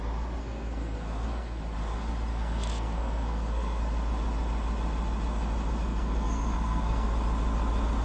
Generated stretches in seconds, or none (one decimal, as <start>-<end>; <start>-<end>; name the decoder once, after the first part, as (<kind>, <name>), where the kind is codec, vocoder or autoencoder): 0.4-1.6 (codec, SNAC); 2.3-3.8; 5.8-7.1